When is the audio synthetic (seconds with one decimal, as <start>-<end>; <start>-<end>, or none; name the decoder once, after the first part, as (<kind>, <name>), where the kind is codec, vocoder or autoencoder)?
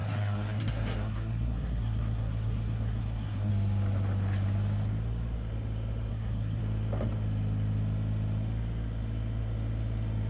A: 0.0-3.5 (codec, SNAC); 6.1-6.6